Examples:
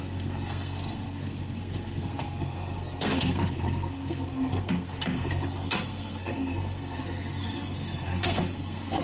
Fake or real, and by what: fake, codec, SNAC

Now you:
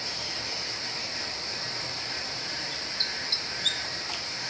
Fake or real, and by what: fake, vocoder, BigVGAN v2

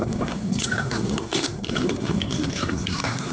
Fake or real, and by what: fake, codec, SNAC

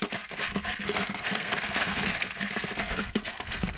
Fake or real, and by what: fake, codec, SNAC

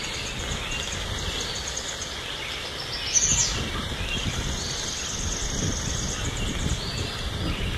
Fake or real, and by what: real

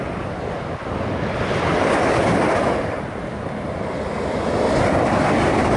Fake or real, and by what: real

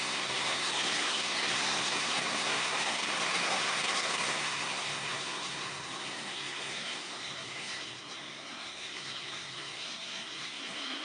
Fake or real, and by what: fake, codec, SNAC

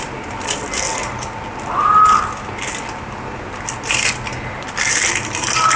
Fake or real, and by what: real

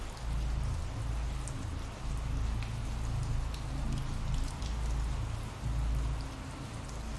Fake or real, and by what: real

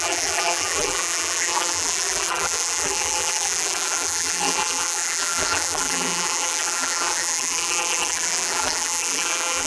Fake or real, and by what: fake, vocoder, BigVGAN v2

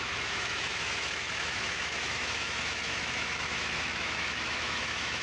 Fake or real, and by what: fake, autoencoder, DAC-VAE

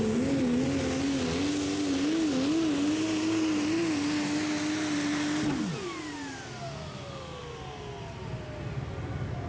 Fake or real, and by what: real